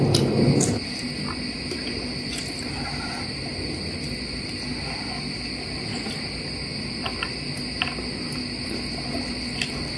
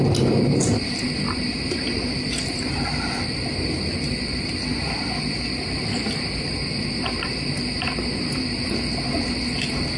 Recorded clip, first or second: first